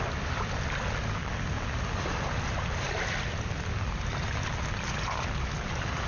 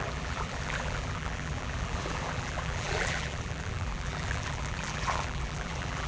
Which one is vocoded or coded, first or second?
second